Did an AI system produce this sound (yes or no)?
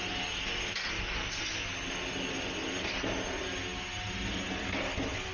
no